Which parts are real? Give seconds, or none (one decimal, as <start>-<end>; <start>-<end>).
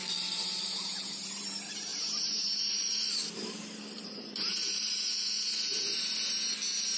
1.4-1.9; 6.0-7.0